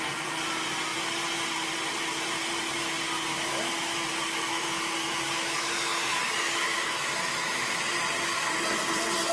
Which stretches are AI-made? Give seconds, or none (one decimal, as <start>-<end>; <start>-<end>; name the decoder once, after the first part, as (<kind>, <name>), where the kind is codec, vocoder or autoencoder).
3.3-7.8 (autoencoder, DAC-VAE)